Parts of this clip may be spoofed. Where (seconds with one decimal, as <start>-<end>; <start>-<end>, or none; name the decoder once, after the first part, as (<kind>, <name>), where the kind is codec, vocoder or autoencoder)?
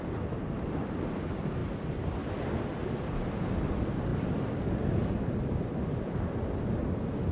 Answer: none